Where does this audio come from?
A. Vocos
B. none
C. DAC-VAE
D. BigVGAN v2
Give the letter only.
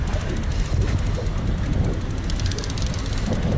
B